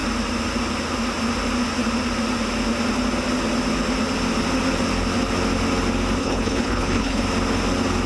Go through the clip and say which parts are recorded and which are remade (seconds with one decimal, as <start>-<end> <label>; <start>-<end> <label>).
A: 0.0-6.2 recorded; 6.2-7.2 remade; 7.2-8.1 recorded